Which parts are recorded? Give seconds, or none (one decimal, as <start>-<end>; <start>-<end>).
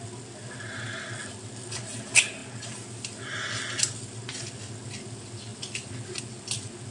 0.0-6.9